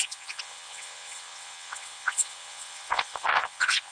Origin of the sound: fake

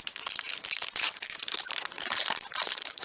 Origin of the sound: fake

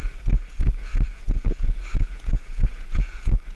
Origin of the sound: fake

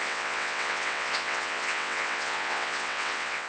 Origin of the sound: fake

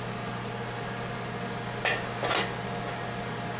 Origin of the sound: real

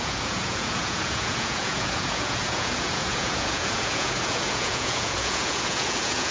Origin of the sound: fake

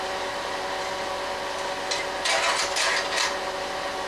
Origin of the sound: real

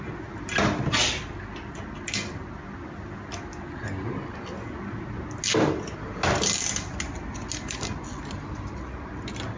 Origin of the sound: real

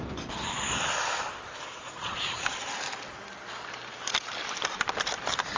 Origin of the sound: real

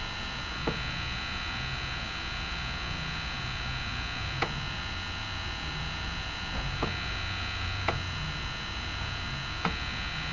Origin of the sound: fake